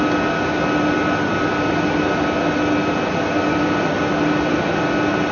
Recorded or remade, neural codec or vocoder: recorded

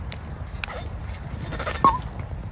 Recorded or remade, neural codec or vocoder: recorded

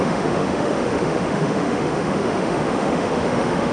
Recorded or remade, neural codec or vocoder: remade, autoencoder, DAC-VAE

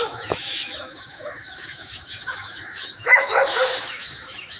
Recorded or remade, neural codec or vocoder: remade, autoencoder, DAC-VAE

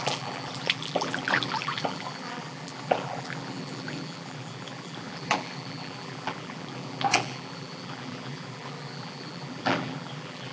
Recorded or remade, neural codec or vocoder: remade, vocoder, BigVGAN v2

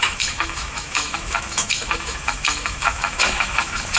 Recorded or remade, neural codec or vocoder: remade, autoencoder, DAC-VAE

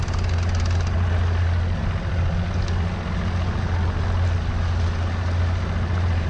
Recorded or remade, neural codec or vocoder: recorded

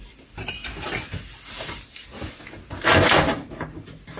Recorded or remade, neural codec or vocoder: recorded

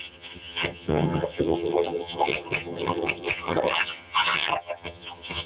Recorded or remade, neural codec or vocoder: remade, vocoder, HiFi-GAN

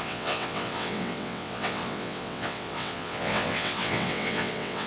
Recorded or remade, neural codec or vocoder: remade, vocoder, WaveNeXt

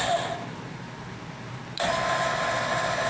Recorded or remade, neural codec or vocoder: recorded